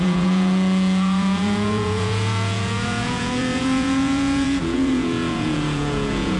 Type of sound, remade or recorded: remade